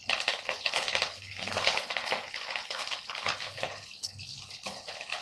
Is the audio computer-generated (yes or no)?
yes